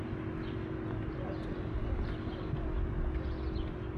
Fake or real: real